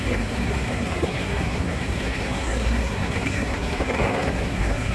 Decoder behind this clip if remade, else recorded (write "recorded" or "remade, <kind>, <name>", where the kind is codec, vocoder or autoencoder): remade, codec, SNAC